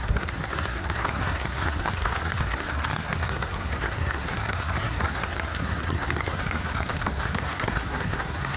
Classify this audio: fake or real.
fake